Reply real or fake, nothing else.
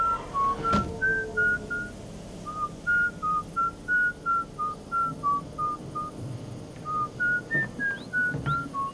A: real